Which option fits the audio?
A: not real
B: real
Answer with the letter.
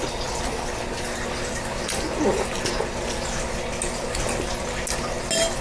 B